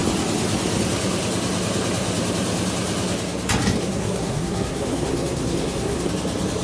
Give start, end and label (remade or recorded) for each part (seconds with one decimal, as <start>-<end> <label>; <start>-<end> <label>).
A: 0.0-3.8 recorded; 3.8-6.1 remade; 6.1-6.6 recorded